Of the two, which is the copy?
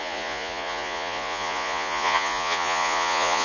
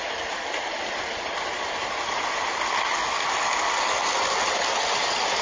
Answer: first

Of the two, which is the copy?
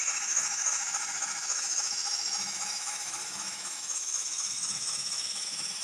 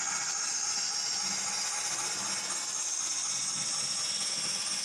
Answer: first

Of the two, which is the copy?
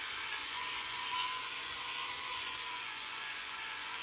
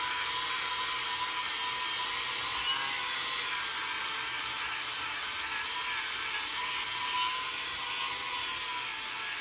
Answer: first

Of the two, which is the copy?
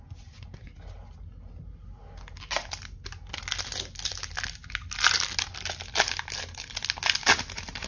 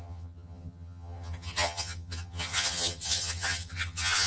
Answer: second